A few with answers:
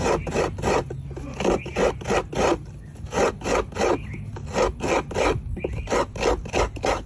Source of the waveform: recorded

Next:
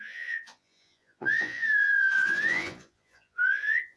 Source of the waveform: remade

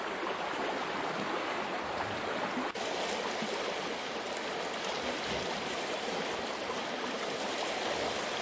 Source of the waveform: recorded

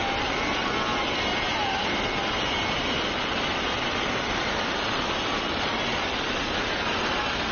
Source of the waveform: recorded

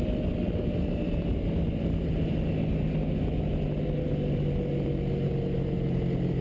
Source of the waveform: recorded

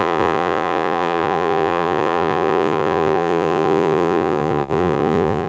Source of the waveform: remade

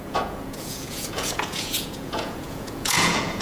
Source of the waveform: remade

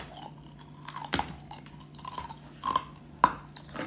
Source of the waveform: recorded